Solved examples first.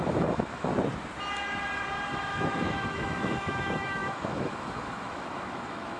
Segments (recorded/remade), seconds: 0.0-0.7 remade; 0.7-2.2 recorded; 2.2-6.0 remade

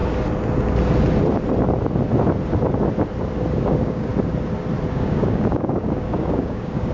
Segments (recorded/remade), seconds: 0.0-3.5 recorded; 3.5-4.1 remade; 4.1-4.9 recorded; 4.9-6.9 remade

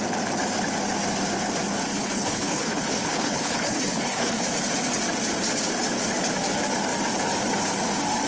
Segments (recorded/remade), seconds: 0.0-1.9 recorded; 1.9-4.4 remade; 4.4-8.3 recorded

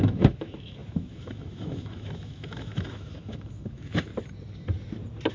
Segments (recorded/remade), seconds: 0.0-4.1 remade; 4.1-5.3 recorded